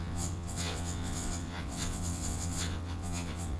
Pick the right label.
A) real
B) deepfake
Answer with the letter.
B